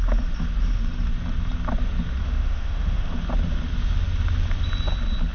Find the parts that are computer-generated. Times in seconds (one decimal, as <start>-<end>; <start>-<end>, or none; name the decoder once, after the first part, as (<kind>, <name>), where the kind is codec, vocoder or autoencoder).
2.2-3.2 (autoencoder, DAC-VAE)